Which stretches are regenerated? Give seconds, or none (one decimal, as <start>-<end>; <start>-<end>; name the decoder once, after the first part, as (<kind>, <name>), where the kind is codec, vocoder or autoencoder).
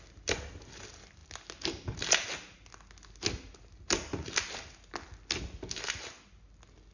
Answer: none